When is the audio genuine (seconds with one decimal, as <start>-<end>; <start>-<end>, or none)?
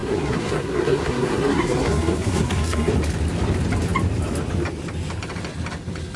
2.9-6.2